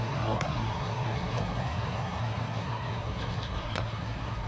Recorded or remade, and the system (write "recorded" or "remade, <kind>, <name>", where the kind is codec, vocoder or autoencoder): remade, codec, SNAC